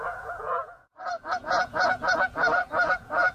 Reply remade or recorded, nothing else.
remade